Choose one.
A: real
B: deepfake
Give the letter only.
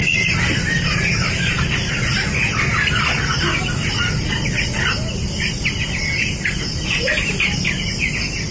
A